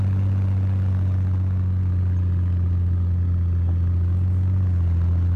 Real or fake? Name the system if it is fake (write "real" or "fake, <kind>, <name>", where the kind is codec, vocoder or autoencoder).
real